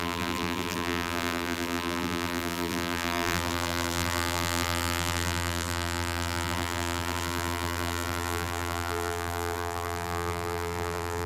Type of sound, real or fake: fake